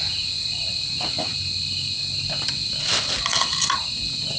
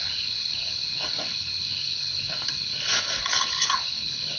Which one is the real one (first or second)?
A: first